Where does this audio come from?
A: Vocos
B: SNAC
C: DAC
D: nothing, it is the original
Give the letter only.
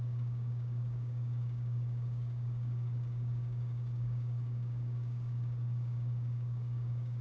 C